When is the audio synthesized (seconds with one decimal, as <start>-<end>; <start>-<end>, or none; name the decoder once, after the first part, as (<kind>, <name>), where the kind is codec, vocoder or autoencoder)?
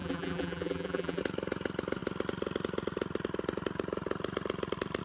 0.0-1.2 (vocoder, BigVGAN v2)